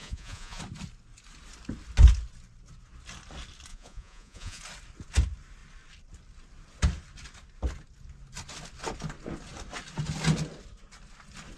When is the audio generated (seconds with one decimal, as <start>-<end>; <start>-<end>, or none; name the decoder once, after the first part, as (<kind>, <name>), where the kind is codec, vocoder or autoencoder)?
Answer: 0.0-0.6 (vocoder, Vocos); 3.7-4.6